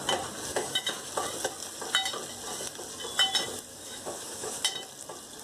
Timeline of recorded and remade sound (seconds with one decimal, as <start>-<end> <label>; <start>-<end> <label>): 0.0-0.5 recorded; 0.5-1.1 remade; 1.1-3.7 recorded; 3.7-4.6 remade; 4.6-5.4 recorded